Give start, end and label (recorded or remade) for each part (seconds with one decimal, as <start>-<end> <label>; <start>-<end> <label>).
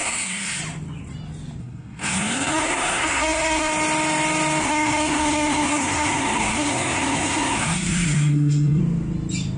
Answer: 0.0-0.6 remade; 0.6-1.6 recorded; 1.6-3.7 remade; 3.7-4.6 recorded; 4.6-8.8 remade; 8.8-9.6 recorded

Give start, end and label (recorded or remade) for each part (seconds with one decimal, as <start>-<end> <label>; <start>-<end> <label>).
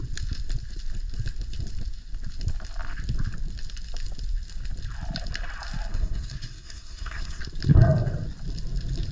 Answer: 0.0-5.9 recorded; 5.9-7.4 remade; 7.4-9.1 recorded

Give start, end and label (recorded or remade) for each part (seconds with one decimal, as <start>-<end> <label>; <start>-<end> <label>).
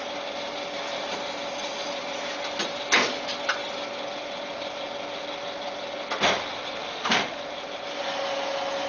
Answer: 0.0-6.8 recorded; 6.8-7.4 remade; 7.4-8.9 recorded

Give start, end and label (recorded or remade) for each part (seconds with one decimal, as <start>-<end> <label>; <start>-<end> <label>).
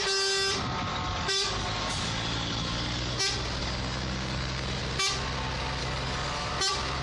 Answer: 0.0-0.9 recorded; 0.9-3.2 remade; 3.2-3.6 recorded; 3.6-4.8 remade; 4.8-5.8 recorded; 5.8-6.5 remade; 6.5-7.0 recorded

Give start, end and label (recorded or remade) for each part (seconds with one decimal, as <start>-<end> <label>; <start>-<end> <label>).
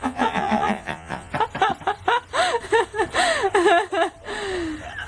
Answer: 0.0-1.3 remade; 1.3-5.1 recorded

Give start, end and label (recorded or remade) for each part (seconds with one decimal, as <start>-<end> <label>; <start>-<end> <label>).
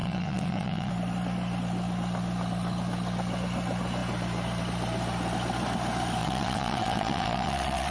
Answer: 0.0-0.9 remade; 0.9-6.2 recorded; 6.2-7.9 remade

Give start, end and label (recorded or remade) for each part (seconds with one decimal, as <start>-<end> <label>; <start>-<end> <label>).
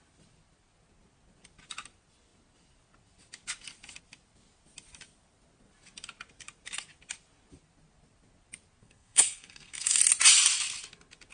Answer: 0.0-8.8 recorded; 8.8-10.0 remade; 10.0-11.3 recorded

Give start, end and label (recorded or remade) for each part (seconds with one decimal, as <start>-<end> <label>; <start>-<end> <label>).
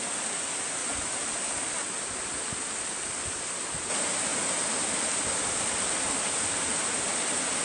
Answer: 0.0-0.8 recorded; 0.8-1.5 remade; 1.5-4.3 recorded; 4.3-4.9 remade; 4.9-7.6 recorded